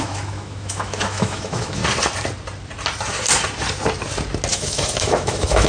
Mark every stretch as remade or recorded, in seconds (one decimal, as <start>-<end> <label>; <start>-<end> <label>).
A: 0.0-1.8 remade; 1.8-4.5 recorded; 4.5-5.7 remade